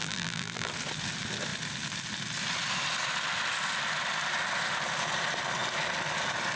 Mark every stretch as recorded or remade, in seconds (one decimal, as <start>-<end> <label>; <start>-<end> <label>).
0.0-0.7 remade; 0.7-6.6 recorded